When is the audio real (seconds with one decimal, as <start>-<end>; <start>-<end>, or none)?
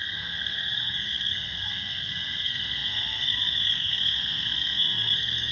none